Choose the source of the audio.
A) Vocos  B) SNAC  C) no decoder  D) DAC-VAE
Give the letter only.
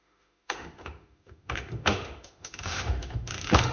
D